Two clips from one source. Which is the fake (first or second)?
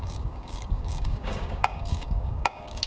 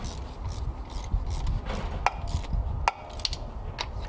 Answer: first